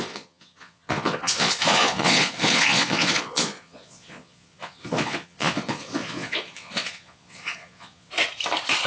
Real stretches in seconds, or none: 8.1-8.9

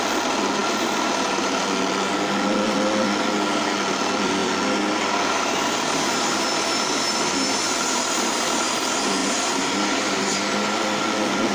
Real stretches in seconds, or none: 0.0-11.5

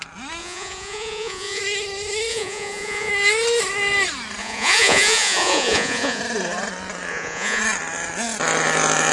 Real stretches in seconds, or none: 0.0-0.4; 1.6-2.3; 3.1-4.4; 6.2-7.1; 7.6-9.1

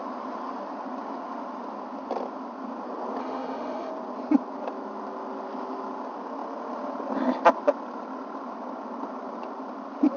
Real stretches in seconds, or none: 0.0-3.2; 3.9-10.2

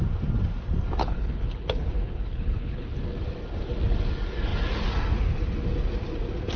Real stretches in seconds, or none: 0.0-1.0; 2.9-6.6